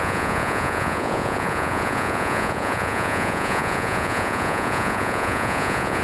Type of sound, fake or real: fake